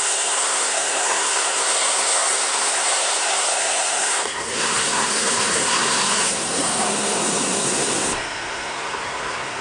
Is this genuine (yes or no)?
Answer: no